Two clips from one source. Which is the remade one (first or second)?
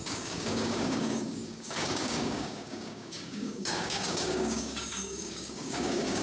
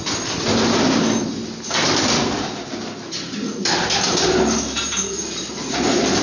first